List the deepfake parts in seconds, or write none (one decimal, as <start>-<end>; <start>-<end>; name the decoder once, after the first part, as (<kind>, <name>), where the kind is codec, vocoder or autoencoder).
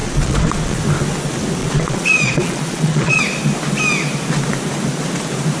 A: 0.0-0.8 (vocoder, Vocos); 1.6-3.2